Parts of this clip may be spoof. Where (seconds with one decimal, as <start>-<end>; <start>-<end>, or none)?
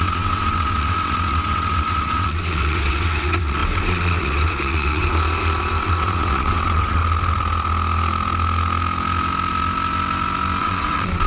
0.0-5.0; 5.8-7.0; 10.6-11.3